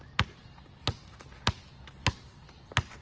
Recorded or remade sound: recorded